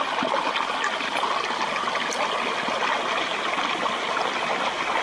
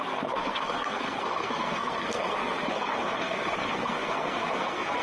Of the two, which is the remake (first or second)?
second